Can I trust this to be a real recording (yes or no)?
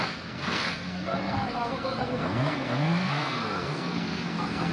no